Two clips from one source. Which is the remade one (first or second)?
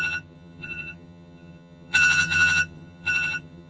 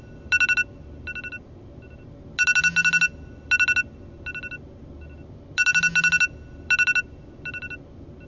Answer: first